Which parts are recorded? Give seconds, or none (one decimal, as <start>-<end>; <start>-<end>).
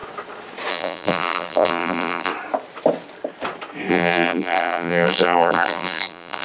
0.0-0.7; 2.3-3.9